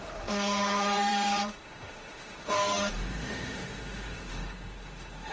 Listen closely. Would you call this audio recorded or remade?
remade